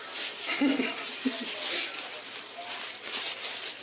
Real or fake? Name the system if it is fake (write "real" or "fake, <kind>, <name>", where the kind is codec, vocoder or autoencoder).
real